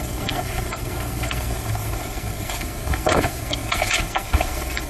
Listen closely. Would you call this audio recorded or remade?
remade